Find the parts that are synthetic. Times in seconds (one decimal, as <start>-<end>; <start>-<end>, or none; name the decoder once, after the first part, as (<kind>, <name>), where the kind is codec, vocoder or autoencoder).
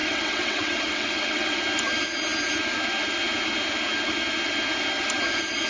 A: 0.0-1.6 (vocoder, WaveNeXt)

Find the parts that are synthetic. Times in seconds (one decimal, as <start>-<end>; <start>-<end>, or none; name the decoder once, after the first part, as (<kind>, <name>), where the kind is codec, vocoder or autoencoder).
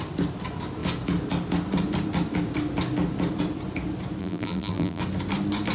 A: 4.2-5.0 (vocoder, BigVGAN v2)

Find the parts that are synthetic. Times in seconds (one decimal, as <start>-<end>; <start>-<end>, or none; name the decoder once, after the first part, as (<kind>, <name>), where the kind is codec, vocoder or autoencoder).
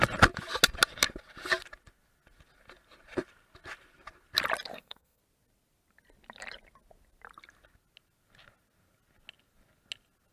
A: 4.7-5.2 (codec, SNAC)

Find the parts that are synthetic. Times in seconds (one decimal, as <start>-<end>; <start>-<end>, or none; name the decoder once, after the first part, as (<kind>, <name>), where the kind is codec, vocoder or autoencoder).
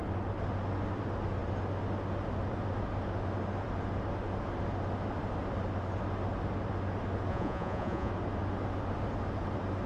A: 7.3-8.1 (vocoder, Vocos)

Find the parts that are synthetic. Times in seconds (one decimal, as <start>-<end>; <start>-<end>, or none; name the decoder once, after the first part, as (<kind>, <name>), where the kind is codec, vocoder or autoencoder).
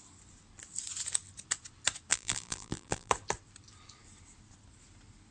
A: 2.1-3.1 (vocoder, BigVGAN v2)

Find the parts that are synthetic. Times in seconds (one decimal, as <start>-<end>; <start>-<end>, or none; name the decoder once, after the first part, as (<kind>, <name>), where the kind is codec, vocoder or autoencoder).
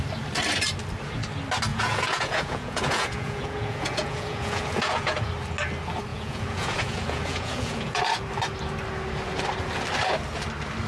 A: 1.7-5.3 (vocoder, Vocos); 6.1-8.0